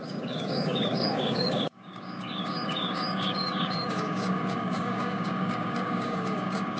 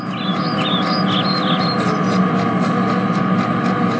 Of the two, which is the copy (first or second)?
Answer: first